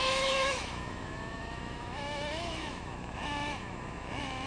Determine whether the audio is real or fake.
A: fake